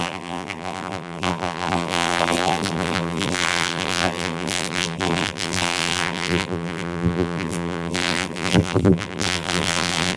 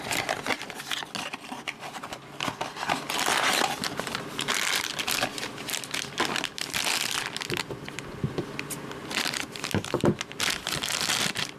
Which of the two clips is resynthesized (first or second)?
first